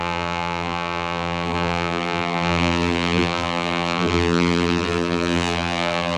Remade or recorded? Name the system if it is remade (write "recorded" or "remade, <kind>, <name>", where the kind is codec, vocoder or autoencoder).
remade, vocoder, BigVGAN v2